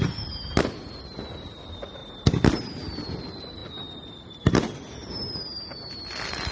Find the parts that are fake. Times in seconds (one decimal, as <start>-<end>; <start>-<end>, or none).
none